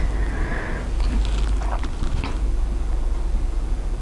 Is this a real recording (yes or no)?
yes